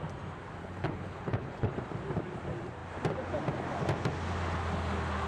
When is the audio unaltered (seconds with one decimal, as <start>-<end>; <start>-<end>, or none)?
0.0-0.6; 1.7-5.3